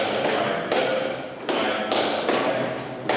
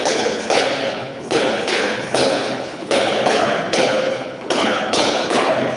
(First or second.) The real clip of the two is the first